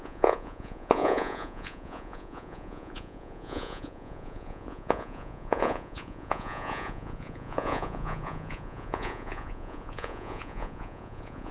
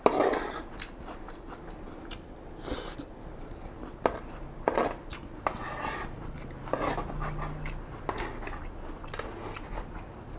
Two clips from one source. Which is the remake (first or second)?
first